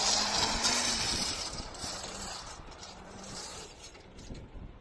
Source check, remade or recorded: remade